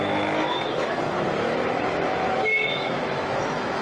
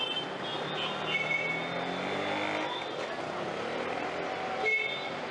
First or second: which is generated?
first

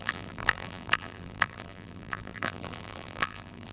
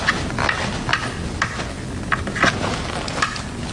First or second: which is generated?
first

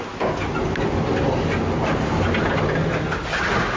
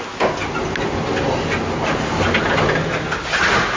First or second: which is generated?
first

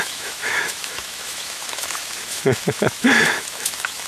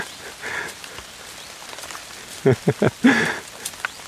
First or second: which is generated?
first